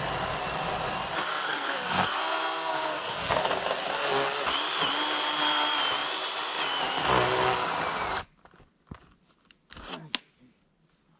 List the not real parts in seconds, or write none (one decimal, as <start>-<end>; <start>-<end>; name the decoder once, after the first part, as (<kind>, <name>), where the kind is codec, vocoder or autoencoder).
1.3-3.4 (codec, SNAC)